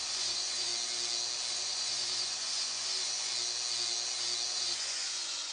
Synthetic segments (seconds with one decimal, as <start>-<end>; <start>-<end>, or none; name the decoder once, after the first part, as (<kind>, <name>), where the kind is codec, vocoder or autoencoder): 0.0-0.7 (vocoder, Vocos); 1.5-3.3; 4.5-5.5